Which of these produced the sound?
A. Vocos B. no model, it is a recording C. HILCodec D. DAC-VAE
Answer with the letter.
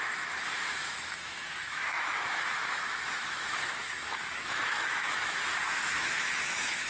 D